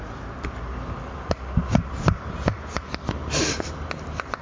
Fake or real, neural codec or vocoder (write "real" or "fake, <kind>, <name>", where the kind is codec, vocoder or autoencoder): real